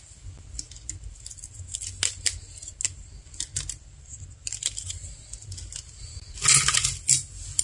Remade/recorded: recorded